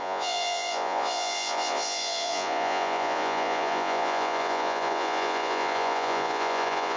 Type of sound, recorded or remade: remade